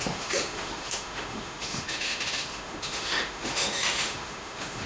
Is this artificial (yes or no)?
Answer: yes